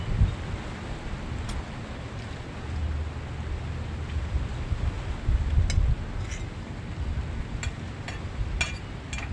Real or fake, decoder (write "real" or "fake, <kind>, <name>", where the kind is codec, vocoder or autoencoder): real